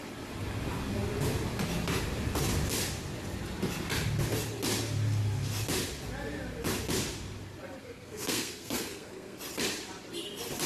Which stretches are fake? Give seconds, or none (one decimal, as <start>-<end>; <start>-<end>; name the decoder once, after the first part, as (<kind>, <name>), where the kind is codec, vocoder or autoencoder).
7.8-9.4 (codec, SNAC)